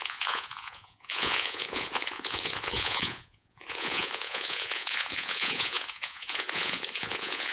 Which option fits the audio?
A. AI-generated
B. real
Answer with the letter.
A